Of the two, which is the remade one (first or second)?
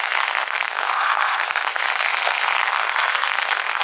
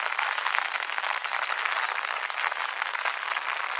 first